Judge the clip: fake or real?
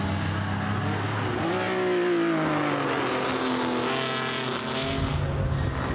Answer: real